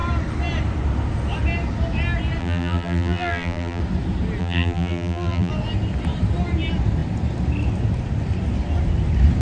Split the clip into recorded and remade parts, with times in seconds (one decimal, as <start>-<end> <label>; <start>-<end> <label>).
0.0-2.4 recorded; 2.4-3.8 remade; 3.8-4.4 recorded; 4.4-5.5 remade; 5.5-9.4 recorded